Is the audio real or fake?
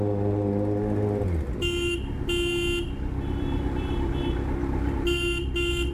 real